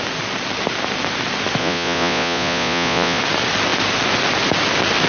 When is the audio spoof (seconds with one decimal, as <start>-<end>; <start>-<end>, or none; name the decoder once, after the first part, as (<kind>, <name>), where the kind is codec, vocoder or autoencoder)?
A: 1.6-3.2 (vocoder, Vocos)